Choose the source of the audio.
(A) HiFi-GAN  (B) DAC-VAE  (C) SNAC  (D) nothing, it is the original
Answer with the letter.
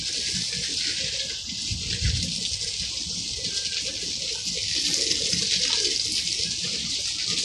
D